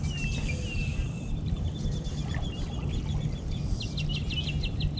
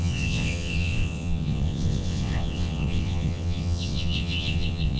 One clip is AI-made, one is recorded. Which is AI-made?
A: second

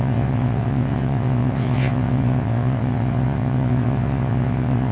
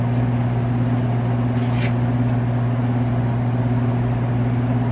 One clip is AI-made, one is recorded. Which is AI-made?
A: first